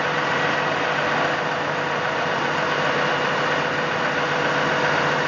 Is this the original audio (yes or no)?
yes